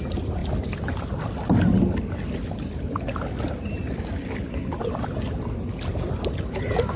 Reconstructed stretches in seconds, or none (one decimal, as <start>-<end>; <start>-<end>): none